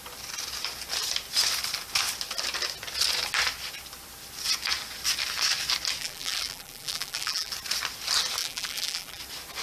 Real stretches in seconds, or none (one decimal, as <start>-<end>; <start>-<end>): 0.0-6.0; 7.5-8.4; 9.2-9.6